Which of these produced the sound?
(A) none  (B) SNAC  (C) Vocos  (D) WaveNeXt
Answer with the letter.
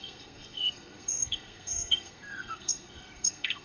B